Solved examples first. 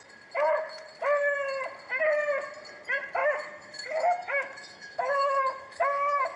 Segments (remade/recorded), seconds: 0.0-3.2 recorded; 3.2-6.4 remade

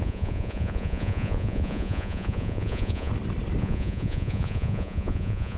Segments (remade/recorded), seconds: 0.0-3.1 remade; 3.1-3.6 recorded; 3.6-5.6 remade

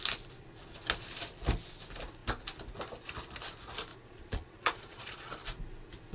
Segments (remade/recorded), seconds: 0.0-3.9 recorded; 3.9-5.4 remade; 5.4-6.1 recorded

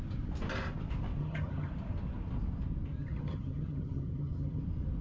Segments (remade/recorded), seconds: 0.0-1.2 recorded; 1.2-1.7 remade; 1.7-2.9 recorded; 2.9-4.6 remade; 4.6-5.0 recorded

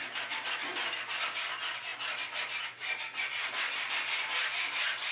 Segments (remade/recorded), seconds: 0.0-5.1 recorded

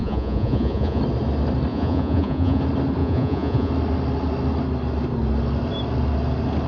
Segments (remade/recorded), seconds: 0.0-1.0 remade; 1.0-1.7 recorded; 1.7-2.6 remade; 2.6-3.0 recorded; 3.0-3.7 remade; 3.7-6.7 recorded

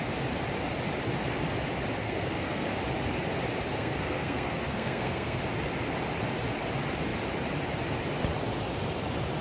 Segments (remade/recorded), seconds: 0.0-2.0 recorded; 2.0-2.7 remade; 2.7-3.7 recorded; 3.7-5.4 remade; 5.4-9.4 recorded

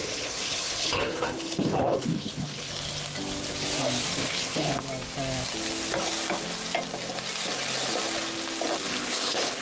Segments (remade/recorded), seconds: 0.0-2.7 remade; 2.7-4.2 recorded; 4.2-4.8 remade; 4.8-8.9 recorded; 8.9-9.6 remade